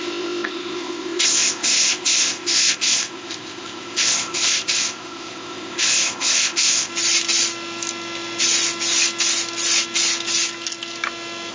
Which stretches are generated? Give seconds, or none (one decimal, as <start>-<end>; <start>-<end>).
0.0-6.9